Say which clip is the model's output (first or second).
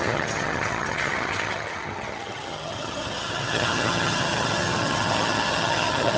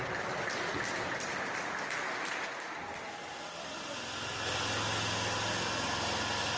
first